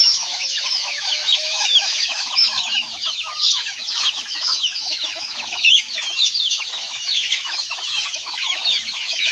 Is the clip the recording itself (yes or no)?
no